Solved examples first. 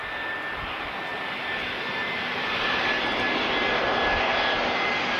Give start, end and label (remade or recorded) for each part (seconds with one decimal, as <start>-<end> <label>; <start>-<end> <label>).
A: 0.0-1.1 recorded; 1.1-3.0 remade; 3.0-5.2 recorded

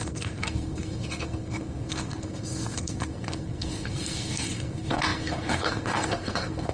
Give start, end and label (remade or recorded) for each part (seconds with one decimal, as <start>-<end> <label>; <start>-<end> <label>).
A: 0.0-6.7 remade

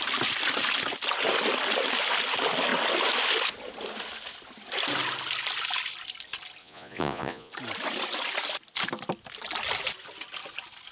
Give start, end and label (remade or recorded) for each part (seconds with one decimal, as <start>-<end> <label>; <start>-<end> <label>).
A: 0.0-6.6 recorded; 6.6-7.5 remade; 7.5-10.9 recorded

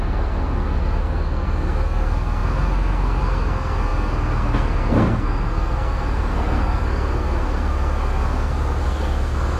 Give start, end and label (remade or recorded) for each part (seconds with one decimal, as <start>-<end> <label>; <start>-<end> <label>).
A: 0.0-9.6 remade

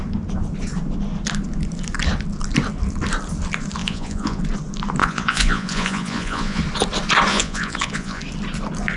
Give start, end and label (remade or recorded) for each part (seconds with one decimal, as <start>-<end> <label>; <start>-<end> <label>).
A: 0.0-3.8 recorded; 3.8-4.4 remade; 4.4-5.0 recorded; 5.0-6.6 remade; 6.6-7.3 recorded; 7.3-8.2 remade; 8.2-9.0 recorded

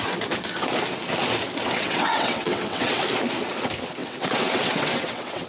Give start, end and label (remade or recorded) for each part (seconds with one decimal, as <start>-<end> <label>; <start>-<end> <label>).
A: 0.0-1.6 recorded; 1.6-3.0 remade; 3.0-4.0 recorded; 4.0-5.5 remade

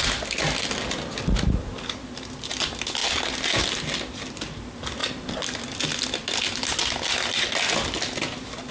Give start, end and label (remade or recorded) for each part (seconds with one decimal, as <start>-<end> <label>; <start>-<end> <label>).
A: 0.0-8.7 recorded

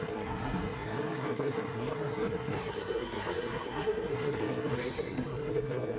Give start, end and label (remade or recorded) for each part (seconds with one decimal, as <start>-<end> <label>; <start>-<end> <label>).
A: 0.0-6.0 remade